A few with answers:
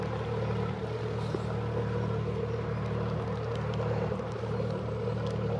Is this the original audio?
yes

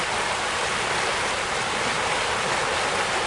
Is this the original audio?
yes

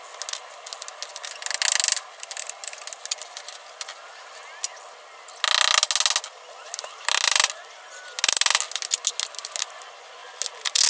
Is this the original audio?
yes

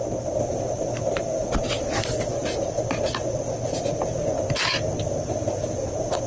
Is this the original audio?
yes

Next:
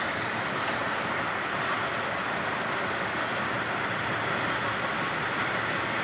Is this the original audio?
yes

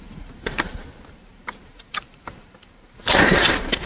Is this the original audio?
no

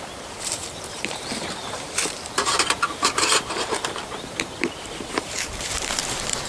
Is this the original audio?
no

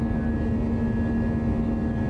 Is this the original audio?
yes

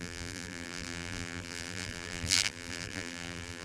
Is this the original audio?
no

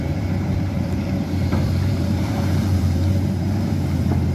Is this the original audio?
no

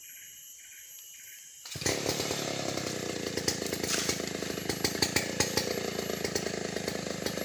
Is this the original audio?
yes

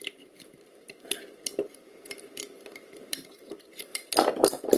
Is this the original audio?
no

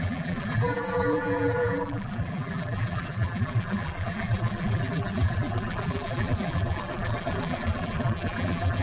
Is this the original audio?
no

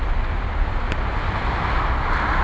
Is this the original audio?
yes